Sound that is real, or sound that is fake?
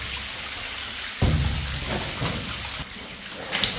real